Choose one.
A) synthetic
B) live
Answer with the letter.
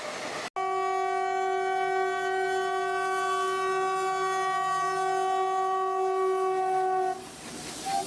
B